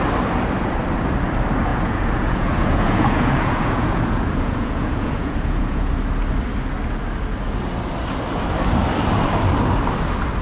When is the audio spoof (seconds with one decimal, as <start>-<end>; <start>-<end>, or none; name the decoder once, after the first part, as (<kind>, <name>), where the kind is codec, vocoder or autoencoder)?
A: 1.7-5.9 (vocoder, Vocos)